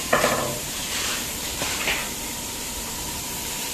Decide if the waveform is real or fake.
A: fake